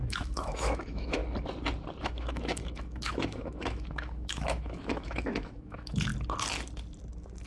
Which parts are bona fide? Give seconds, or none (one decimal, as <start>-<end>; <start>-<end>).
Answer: 1.2-2.0; 6.1-7.5